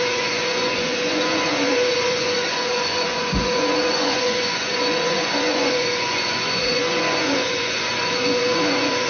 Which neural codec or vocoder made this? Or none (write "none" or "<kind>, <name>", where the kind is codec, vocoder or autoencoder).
vocoder, Vocos